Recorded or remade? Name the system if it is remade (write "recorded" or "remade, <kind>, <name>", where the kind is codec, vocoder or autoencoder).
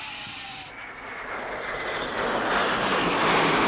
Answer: recorded